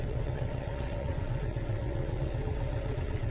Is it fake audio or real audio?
fake